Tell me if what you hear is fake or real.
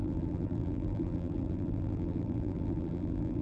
fake